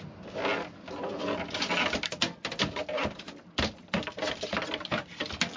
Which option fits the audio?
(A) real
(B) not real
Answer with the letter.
A